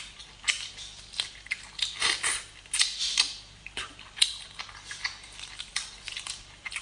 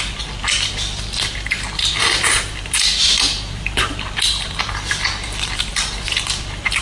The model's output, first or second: second